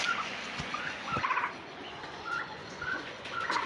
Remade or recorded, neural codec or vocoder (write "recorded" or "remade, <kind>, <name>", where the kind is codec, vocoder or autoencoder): remade, vocoder, Vocos